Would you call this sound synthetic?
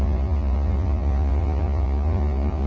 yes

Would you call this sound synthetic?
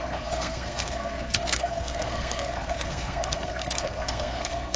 yes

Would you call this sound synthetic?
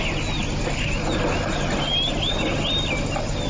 no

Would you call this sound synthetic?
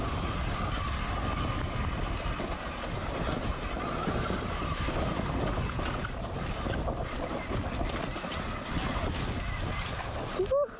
no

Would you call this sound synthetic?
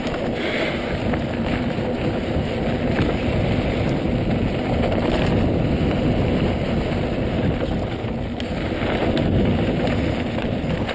no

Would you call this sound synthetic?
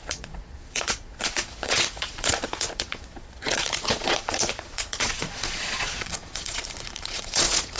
yes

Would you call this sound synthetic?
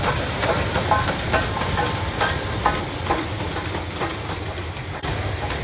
no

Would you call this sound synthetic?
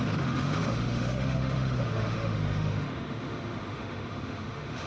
yes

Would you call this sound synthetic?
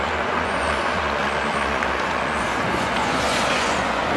yes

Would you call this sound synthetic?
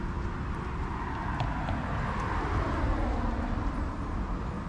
no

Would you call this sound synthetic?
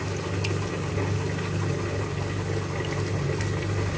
no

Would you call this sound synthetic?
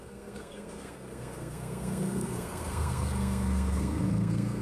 yes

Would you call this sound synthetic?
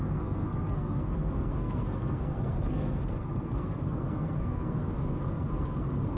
yes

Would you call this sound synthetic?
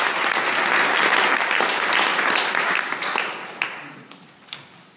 no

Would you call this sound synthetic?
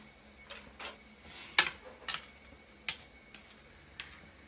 no